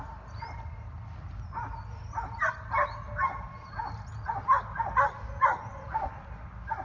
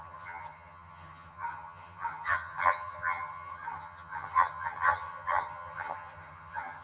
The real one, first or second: first